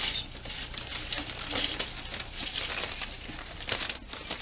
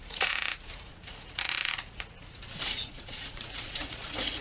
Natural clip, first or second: first